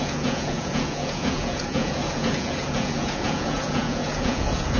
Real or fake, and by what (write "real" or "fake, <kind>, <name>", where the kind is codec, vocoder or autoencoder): fake, vocoder, Vocos